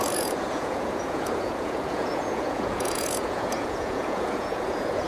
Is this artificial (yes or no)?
yes